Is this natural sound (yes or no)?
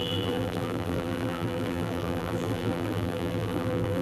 no